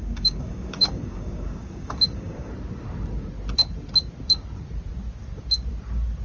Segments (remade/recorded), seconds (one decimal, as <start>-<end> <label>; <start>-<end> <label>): 0.0-2.5 remade; 2.5-6.2 recorded